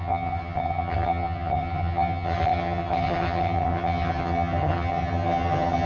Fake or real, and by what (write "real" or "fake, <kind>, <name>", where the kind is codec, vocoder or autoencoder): fake, vocoder, HiFi-GAN